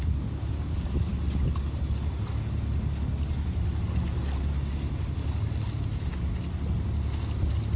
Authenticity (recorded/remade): recorded